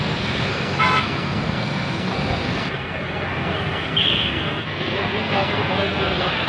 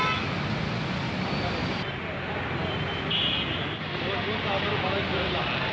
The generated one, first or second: first